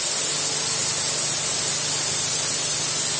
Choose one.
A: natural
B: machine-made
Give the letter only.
A